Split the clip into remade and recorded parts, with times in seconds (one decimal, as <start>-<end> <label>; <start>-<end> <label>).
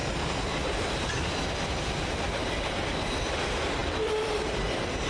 0.0-3.1 recorded; 3.1-5.1 remade